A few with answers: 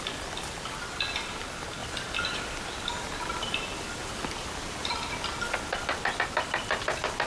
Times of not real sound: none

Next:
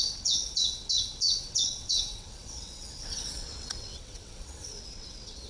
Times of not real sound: 0.0-5.5

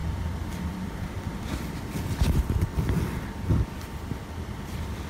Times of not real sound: 0.0-2.2

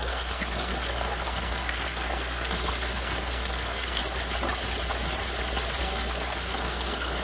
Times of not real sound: 0.0-4.0; 5.8-7.2

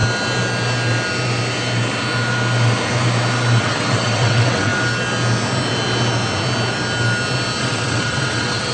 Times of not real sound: 3.6-4.7; 7.6-8.7

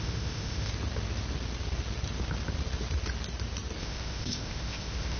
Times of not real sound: 0.0-0.7; 3.8-5.2

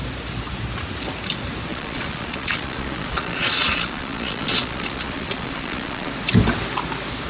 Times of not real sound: 1.7-6.1

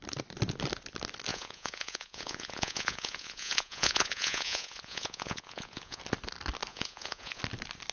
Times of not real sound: 1.3-6.0; 6.7-7.4